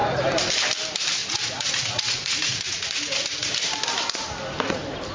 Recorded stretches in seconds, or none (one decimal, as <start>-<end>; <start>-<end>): 0.0-1.2; 3.5-5.1